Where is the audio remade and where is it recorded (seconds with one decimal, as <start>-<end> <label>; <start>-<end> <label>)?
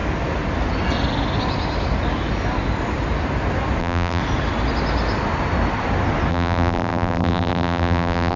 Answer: 0.0-3.8 recorded; 3.8-4.2 remade; 4.2-6.3 recorded; 6.3-8.4 remade